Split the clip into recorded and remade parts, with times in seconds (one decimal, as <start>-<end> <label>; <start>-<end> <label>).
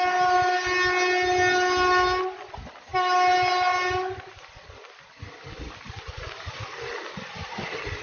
0.0-8.0 recorded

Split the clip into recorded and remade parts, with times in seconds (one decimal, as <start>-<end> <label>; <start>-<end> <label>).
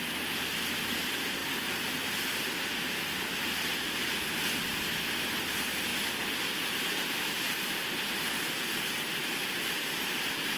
0.0-1.4 recorded; 1.4-2.4 remade; 2.4-10.6 recorded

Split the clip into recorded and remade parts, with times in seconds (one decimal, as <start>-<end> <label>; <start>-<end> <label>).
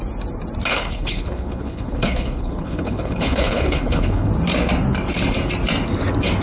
0.0-0.7 recorded; 0.7-4.3 remade; 4.3-6.4 recorded